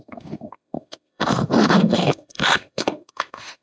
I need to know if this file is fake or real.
fake